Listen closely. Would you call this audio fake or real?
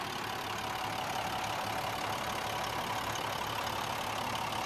real